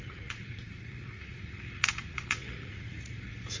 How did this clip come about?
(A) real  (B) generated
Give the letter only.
B